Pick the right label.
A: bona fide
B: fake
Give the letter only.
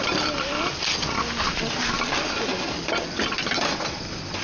A